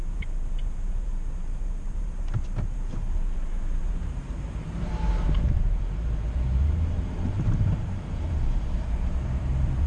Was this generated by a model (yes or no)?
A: yes